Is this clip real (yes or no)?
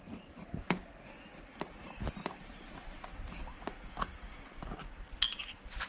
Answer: yes